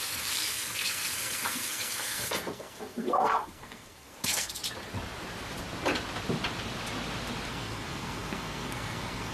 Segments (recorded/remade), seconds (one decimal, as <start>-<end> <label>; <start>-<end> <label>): 0.0-4.6 remade; 4.6-7.5 recorded; 7.5-9.3 remade